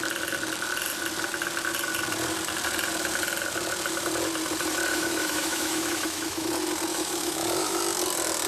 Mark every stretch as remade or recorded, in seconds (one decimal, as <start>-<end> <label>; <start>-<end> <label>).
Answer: 0.0-4.9 recorded; 4.9-6.5 remade; 6.5-6.9 recorded; 6.9-7.8 remade; 7.8-8.5 recorded